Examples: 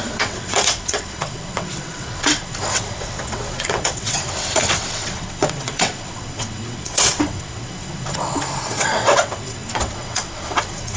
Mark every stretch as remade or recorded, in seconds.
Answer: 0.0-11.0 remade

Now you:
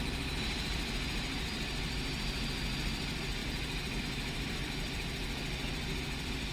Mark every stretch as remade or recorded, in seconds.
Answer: 0.0-6.5 recorded

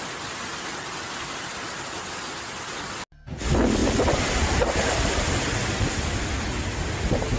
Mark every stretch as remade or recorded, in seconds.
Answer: 0.0-7.4 recorded

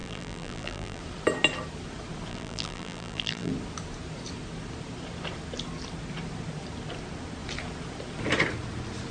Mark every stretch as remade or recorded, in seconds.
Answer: 0.0-1.0 remade; 1.0-2.3 recorded; 2.3-3.5 remade; 3.5-9.1 recorded

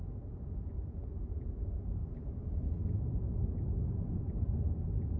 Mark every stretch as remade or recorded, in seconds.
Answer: 0.0-2.0 remade; 2.0-2.9 recorded; 2.9-3.5 remade; 3.5-4.1 recorded; 4.1-5.2 remade

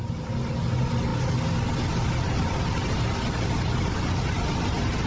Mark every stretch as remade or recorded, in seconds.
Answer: 0.0-5.1 recorded

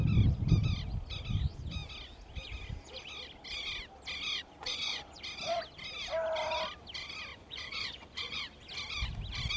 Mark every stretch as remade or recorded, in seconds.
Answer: 0.0-4.6 recorded; 4.6-5.2 remade; 5.2-7.3 recorded; 7.3-8.4 remade; 8.4-9.6 recorded